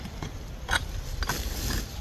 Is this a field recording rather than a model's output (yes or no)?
yes